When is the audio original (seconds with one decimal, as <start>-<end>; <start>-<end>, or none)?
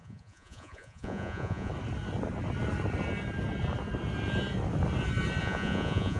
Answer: 1.7-5.4